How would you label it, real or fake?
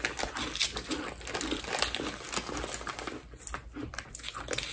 real